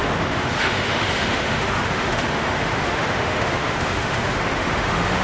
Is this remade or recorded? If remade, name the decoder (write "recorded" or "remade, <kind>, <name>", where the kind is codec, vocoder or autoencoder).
remade, autoencoder, DAC-VAE